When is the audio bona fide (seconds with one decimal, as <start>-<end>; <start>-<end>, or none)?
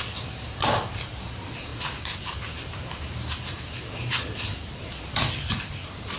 0.0-1.7; 5.0-6.2